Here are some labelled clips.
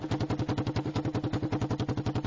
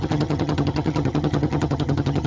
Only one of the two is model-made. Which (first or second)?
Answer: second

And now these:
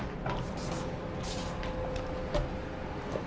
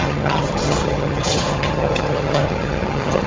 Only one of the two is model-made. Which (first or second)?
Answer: second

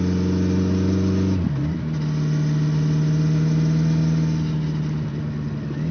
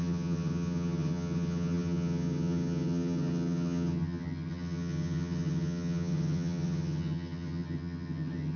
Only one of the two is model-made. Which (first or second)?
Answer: second